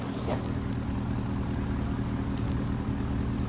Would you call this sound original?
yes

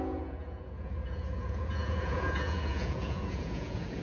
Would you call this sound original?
no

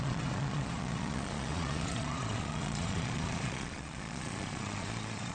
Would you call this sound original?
no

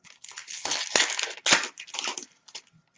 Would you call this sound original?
yes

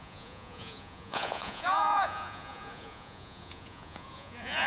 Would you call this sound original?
no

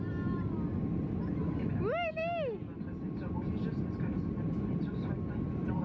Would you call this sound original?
yes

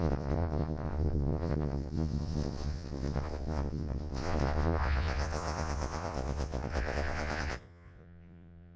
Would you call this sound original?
no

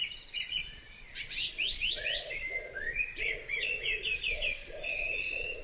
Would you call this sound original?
no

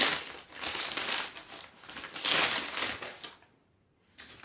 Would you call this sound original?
yes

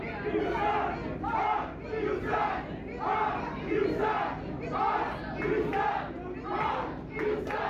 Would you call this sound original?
yes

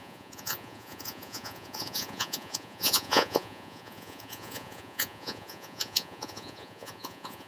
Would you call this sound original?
no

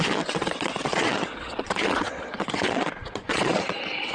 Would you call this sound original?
no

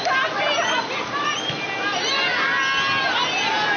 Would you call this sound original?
yes